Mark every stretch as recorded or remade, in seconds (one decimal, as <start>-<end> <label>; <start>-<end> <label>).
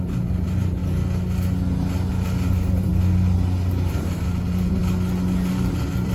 0.0-0.8 remade; 0.8-2.1 recorded; 2.1-2.9 remade; 2.9-3.9 recorded; 3.9-4.8 remade; 4.8-5.5 recorded; 5.5-6.1 remade